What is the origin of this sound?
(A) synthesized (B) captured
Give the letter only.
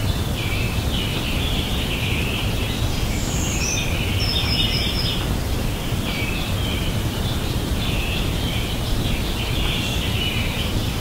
A